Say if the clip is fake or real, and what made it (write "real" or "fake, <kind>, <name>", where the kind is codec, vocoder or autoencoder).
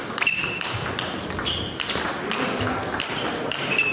real